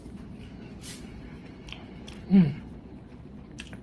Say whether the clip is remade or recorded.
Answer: remade